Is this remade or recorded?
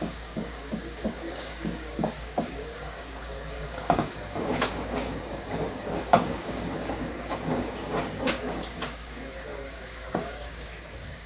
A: remade